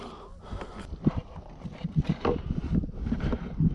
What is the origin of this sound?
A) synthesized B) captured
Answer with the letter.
B